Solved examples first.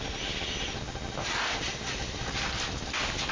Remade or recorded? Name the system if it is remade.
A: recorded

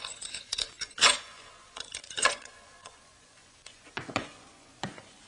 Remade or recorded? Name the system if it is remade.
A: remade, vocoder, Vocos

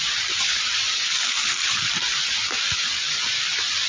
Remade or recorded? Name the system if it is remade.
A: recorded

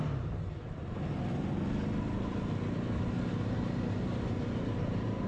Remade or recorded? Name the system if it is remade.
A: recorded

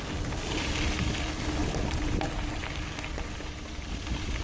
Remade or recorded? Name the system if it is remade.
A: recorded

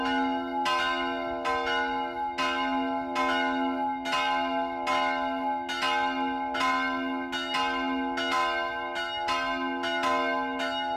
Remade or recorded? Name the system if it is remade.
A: recorded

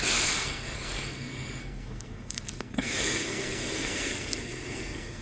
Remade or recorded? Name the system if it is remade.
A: remade, codec, SNAC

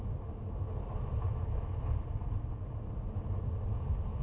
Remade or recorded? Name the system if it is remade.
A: recorded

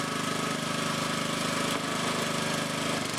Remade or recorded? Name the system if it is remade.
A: recorded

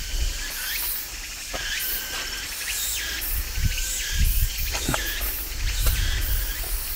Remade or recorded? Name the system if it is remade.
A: recorded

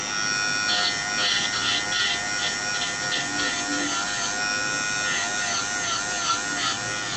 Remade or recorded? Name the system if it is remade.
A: recorded